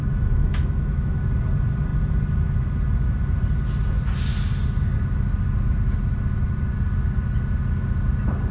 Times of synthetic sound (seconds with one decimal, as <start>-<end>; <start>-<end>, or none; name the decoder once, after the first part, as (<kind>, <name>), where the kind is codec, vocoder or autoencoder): 0.4-1.2 (autoencoder, DAC-VAE)